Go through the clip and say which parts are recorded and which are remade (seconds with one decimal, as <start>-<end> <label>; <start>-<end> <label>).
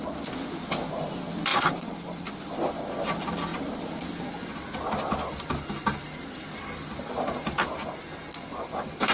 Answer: 0.0-1.5 remade; 1.5-2.3 recorded; 2.3-3.5 remade; 3.5-4.0 recorded; 4.0-9.1 remade